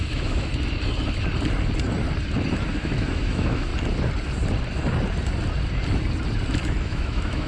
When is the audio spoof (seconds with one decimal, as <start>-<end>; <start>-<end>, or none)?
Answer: 0.0-0.5; 2.7-3.7; 6.8-7.5